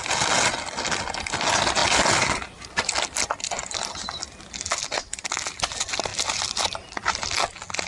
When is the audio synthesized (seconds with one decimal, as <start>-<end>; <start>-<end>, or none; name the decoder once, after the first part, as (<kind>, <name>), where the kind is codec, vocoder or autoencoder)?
none